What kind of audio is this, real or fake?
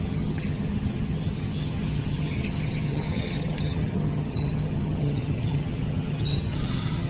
fake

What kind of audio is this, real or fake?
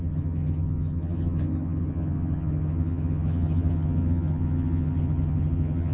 fake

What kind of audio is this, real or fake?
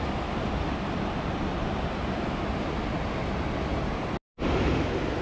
real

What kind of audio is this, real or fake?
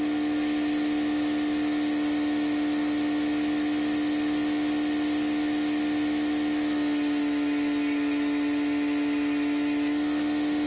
real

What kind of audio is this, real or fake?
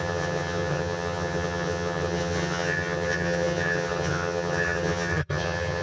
fake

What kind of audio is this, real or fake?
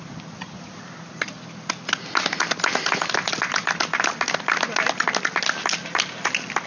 real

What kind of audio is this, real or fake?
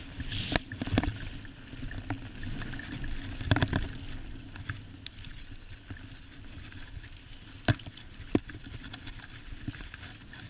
real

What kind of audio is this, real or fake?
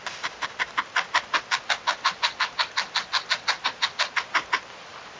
real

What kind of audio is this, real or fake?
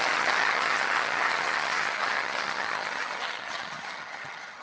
fake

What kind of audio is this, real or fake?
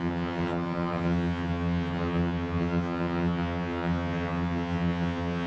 fake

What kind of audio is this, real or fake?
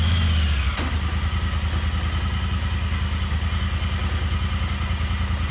real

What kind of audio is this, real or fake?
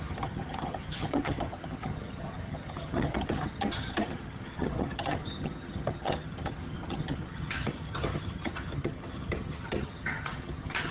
fake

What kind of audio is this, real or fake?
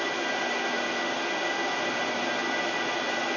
real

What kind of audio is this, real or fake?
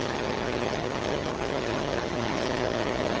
fake